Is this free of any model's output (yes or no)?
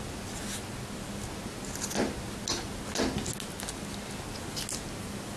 yes